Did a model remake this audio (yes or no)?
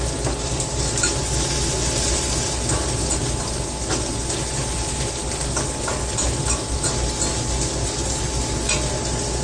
no